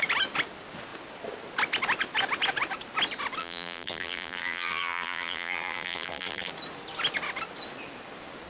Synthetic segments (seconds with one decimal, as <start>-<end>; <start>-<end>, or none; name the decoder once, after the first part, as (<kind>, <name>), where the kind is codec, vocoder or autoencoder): 3.4-6.5 (vocoder, BigVGAN v2)